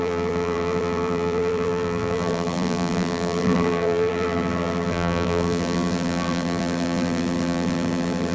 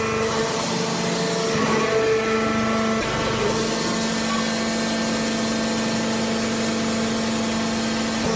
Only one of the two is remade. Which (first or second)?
first